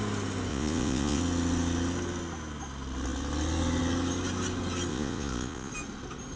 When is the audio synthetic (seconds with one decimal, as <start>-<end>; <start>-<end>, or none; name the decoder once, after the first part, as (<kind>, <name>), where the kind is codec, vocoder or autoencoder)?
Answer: 0.5-1.2 (vocoder, Vocos); 4.9-5.7